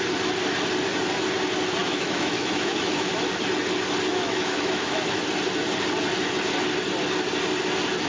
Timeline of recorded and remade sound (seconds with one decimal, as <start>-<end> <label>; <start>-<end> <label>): 0.0-1.8 recorded; 1.8-3.1 remade; 3.1-4.1 recorded; 4.1-5.2 remade; 5.2-8.1 recorded